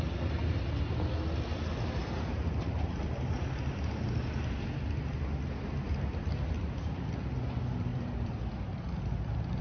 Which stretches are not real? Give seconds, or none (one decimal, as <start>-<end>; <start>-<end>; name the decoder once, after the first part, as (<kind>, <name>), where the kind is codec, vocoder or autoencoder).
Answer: 2.0-2.9 (vocoder, BigVGAN v2); 7.9-8.9